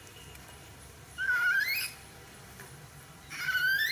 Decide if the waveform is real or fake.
fake